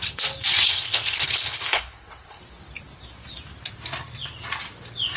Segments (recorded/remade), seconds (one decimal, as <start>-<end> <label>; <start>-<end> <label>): 0.0-0.7 recorded; 0.7-2.4 remade; 2.4-5.2 recorded